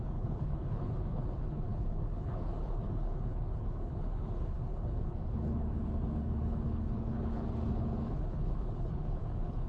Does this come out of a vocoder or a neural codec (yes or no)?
yes